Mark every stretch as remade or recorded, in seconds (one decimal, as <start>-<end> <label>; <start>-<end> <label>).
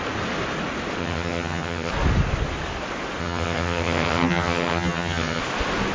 0.0-1.0 recorded; 1.0-1.9 remade; 1.9-3.2 recorded; 3.2-5.4 remade; 5.4-5.9 recorded